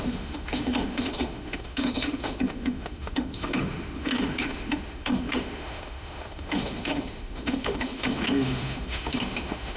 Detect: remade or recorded remade